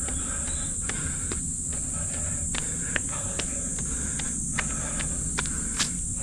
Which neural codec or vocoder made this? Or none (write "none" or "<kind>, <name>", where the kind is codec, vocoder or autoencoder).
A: none